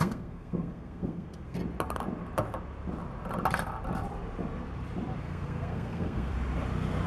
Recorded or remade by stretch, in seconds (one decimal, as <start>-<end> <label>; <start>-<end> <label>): 0.0-1.6 remade; 1.6-5.2 recorded; 5.2-6.3 remade; 6.3-7.1 recorded

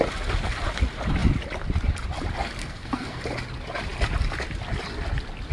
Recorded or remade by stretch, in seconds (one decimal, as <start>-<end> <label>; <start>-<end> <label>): 0.0-2.6 recorded; 2.6-3.2 remade; 3.2-5.5 recorded